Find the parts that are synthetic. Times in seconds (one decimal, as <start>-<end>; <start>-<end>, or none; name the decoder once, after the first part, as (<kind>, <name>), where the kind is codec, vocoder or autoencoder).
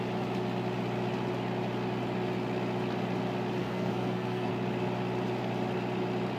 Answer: 3.6-4.5 (codec, SNAC)